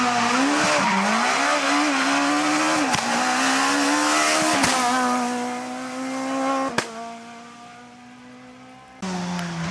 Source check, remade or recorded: recorded